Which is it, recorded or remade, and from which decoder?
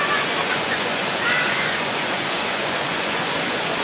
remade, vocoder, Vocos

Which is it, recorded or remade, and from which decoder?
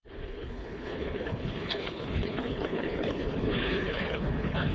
remade, codec, HILCodec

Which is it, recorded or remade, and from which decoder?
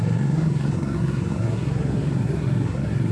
remade, codec, SNAC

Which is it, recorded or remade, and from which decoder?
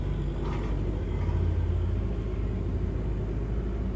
recorded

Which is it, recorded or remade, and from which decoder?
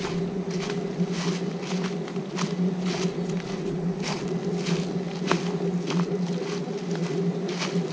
recorded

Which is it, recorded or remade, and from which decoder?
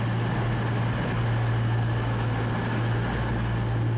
recorded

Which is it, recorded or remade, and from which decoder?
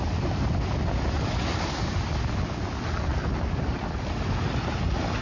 recorded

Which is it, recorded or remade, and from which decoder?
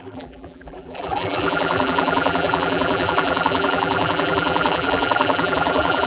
remade, vocoder, BigVGAN v2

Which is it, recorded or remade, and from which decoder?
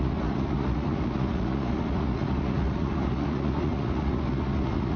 remade, vocoder, Vocos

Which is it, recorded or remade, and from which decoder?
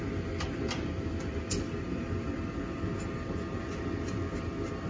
recorded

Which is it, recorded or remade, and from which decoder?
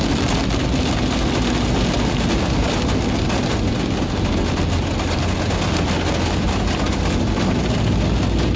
recorded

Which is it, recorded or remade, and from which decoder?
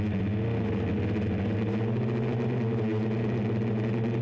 recorded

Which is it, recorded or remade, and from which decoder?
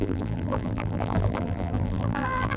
remade, vocoder, BigVGAN v2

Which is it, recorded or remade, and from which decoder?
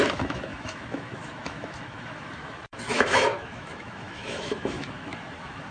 remade, autoencoder, DAC-VAE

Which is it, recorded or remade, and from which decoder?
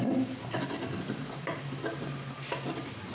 recorded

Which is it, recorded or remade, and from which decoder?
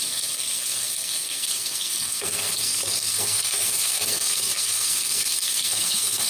remade, codec, SNAC